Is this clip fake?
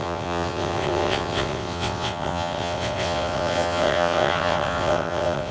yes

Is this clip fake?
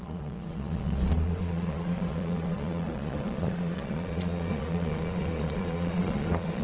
yes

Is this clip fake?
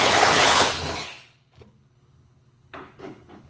yes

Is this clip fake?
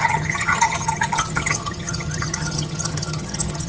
yes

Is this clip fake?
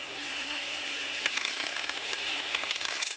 yes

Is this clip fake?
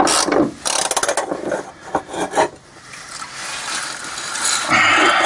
no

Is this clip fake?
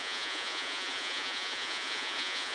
yes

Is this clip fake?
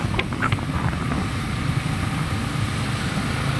no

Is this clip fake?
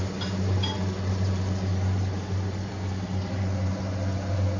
no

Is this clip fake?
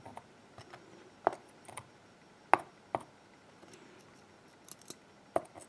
no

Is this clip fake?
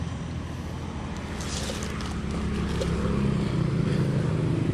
no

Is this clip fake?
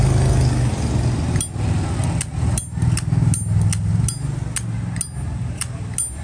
no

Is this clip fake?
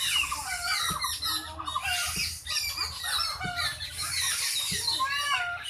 no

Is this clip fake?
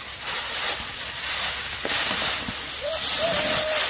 no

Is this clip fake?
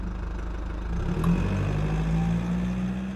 no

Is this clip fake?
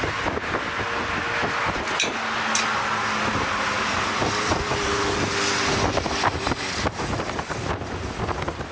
no